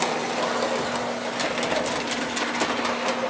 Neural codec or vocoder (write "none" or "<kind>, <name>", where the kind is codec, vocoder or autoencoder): none